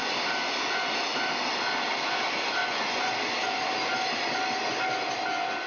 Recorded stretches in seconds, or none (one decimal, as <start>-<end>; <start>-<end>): 0.0-2.6; 3.1-5.7

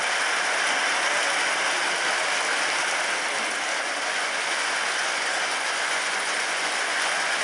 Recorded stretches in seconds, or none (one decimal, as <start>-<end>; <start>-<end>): 0.0-3.7

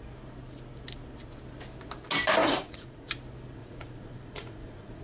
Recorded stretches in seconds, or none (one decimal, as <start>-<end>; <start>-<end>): 0.0-2.4; 3.1-3.6